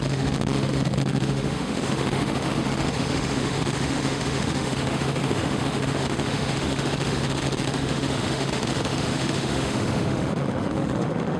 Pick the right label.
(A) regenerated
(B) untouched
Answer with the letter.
A